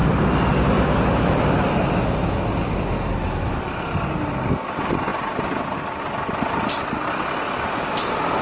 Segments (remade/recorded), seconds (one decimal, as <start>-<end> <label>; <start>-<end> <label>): 0.0-8.4 recorded